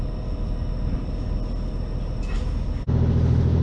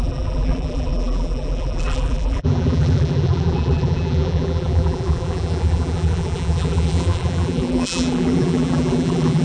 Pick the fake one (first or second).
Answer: second